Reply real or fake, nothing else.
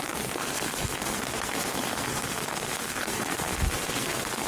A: fake